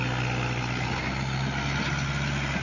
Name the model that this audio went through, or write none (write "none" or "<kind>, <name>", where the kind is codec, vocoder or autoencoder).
none